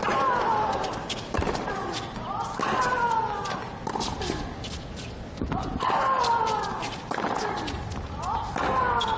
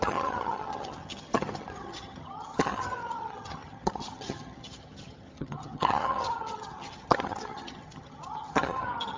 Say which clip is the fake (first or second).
second